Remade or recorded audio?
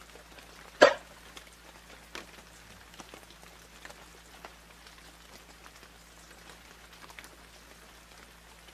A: recorded